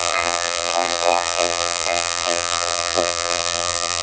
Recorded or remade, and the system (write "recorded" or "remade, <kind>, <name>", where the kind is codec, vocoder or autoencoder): remade, vocoder, BigVGAN v2